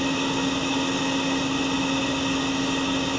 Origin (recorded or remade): recorded